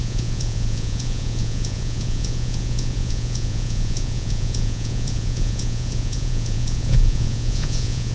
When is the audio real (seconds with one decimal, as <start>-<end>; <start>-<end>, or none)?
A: none